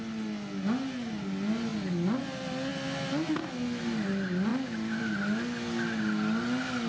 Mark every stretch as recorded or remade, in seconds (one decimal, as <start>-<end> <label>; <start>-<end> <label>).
0.0-6.9 recorded